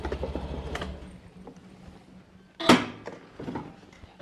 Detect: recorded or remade recorded